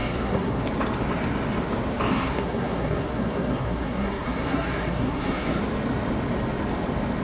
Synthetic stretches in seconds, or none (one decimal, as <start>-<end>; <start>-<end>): 0.0-0.6; 2.1-5.6